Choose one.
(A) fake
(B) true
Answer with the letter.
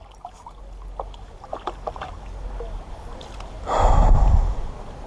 B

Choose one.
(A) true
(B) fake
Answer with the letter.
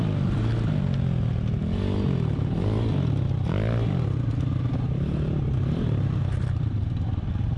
A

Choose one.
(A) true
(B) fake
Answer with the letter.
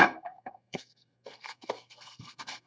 B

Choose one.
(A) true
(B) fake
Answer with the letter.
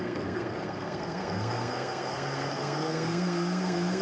B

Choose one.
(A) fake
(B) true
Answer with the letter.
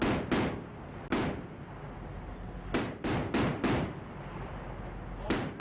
B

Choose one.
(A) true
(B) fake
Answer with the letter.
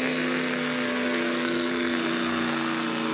B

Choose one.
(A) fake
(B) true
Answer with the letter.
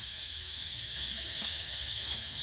A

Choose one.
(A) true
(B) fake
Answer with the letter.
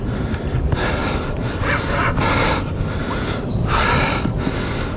A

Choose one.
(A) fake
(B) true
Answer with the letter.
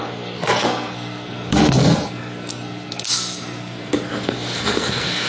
A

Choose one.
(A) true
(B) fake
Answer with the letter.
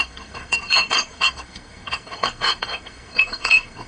B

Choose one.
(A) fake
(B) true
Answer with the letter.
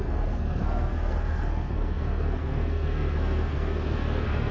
A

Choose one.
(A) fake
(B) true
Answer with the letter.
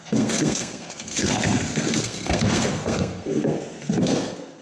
A